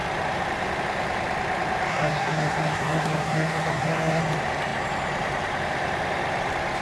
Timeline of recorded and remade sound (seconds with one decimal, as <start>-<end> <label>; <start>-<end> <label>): 0.0-1.9 recorded; 1.9-4.2 remade; 4.2-6.8 recorded